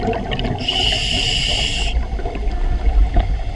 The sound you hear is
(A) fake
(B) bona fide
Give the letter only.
B